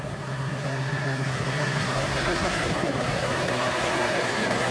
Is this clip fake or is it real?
fake